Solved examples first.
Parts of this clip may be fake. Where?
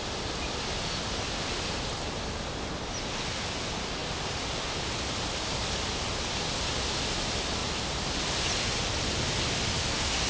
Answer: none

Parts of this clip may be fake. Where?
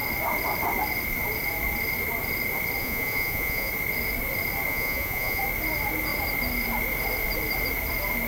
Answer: 2.8-3.7 (vocoder, Vocos); 4.7-5.4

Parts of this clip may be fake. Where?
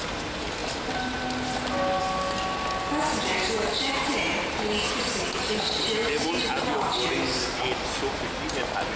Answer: none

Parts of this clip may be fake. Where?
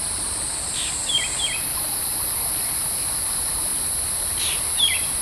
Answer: none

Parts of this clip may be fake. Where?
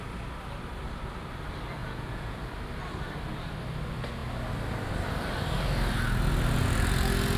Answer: 1.8-2.4 (vocoder, Vocos)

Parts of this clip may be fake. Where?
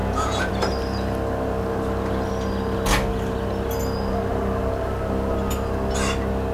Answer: 0.0-0.5 (vocoder, Vocos)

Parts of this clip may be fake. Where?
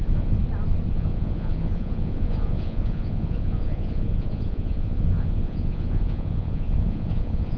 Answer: 0.0-0.4 (vocoder, Vocos); 0.9-7.6